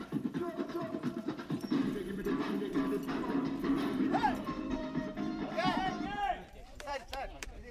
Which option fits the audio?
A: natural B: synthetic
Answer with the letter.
B